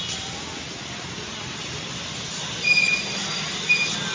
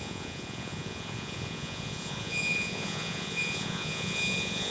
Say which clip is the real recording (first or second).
first